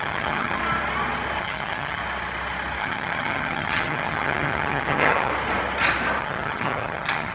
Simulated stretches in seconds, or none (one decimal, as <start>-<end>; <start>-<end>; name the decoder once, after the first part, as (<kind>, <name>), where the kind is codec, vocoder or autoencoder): 0.0-0.6 (vocoder, HiFi-GAN); 1.4-2.0; 2.8-5.3; 6.2-7.3